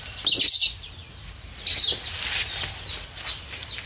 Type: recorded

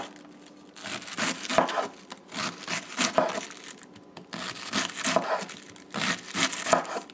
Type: recorded